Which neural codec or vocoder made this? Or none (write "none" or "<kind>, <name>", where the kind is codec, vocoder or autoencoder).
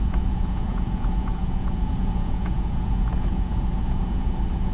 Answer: vocoder, Vocos